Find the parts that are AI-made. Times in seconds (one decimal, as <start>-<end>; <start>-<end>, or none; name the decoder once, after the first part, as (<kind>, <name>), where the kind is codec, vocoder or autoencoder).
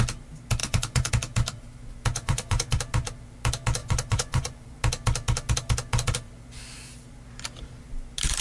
0.6-1.1 (vocoder, Vocos); 2.1-2.8; 3.8-4.8